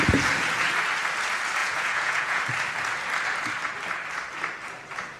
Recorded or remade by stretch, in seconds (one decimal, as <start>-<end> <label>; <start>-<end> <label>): 0.0-1.6 recorded; 1.6-2.4 remade; 2.4-5.2 recorded